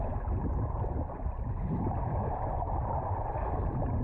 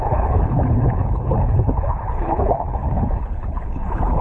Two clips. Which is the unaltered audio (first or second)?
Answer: first